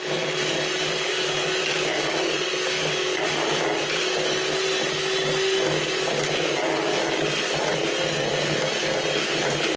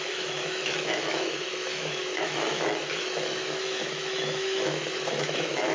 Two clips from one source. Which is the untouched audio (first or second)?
first